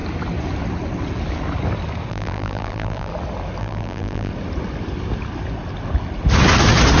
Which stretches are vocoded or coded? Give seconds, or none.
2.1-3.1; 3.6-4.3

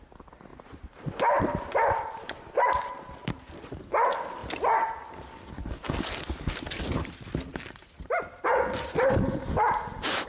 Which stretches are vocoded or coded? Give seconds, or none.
0.5-3.8; 7.5-10.3

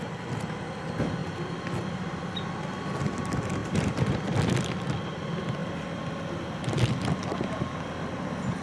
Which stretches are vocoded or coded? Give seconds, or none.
3.6-4.2

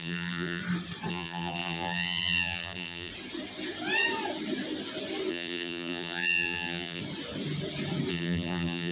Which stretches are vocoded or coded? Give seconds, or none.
0.0-0.6; 1.1-3.1; 5.3-7.0; 8.1-8.9

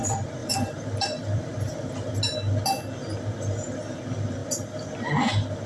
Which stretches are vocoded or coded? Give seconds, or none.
0.4-2.1

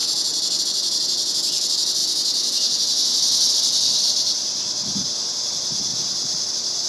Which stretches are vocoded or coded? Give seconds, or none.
0.0-2.0; 3.5-5.9; 6.5-6.9